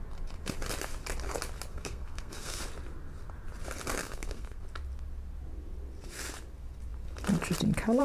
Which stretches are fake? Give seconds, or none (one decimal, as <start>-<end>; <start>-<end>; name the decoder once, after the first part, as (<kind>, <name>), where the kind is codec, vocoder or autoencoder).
1.7-2.6 (codec, SNAC); 4.0-4.6